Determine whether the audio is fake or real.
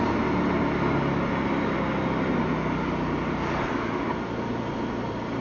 real